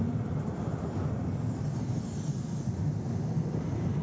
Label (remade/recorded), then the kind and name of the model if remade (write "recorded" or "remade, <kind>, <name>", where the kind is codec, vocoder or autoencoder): recorded